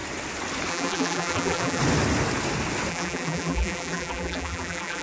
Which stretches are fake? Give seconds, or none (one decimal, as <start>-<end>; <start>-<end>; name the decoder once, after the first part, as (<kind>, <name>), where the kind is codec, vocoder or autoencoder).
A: 0.7-1.8 (vocoder, BigVGAN v2); 2.9-5.0